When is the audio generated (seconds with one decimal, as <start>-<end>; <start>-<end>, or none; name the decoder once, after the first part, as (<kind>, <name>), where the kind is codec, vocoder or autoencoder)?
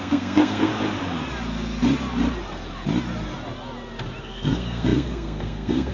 0.0-0.7 (codec, SNAC); 4.2-5.9